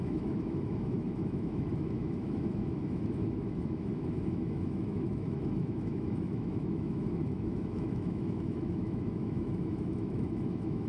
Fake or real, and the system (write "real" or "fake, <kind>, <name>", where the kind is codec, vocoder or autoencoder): fake, autoencoder, DAC-VAE